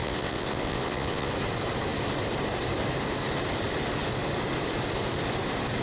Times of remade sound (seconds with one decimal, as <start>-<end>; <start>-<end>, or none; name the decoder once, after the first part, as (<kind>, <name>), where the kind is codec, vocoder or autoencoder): 0.0-1.3 (vocoder, WaveNeXt)